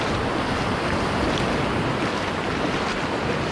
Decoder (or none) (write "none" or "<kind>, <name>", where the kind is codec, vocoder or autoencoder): none